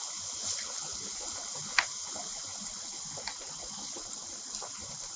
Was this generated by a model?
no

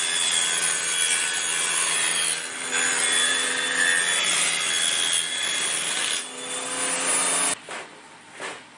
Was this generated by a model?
no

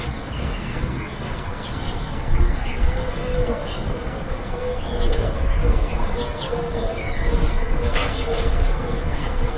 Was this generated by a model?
yes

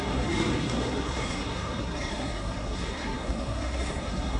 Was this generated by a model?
yes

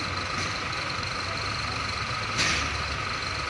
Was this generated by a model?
no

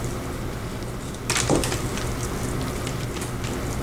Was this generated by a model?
no